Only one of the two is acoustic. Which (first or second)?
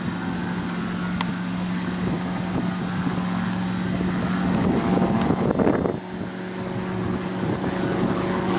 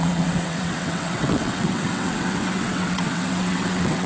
first